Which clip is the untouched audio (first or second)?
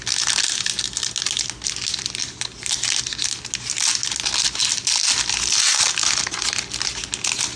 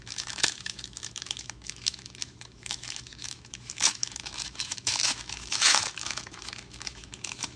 first